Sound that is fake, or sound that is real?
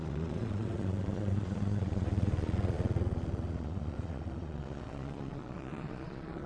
fake